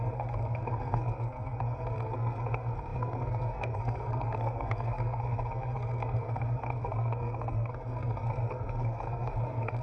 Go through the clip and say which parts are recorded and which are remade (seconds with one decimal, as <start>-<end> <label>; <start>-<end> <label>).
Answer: 0.0-9.8 remade